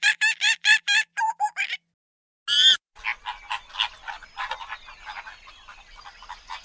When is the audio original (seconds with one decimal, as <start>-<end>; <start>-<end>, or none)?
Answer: 0.0-6.6